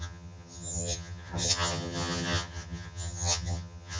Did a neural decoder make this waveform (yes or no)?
yes